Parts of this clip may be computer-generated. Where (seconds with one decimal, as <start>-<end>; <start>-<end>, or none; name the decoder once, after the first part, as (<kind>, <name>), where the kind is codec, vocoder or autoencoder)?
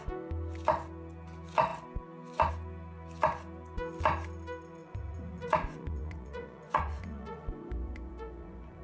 4.8-8.8 (vocoder, Vocos)